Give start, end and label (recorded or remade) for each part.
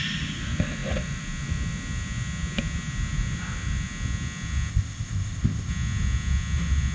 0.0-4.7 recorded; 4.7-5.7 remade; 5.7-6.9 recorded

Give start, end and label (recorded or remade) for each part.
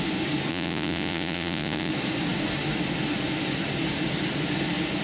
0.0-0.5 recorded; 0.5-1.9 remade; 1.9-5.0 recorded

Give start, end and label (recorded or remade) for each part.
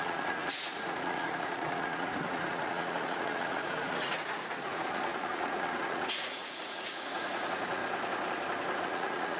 0.0-7.8 remade; 7.8-8.8 recorded; 8.8-9.4 remade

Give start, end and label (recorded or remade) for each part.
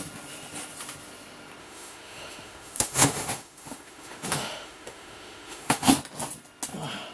0.0-1.6 recorded; 1.6-5.9 remade; 5.9-7.1 recorded